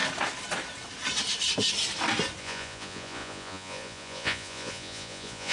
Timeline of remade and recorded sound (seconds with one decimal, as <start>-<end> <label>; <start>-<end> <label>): 0.0-2.4 recorded; 2.4-5.5 remade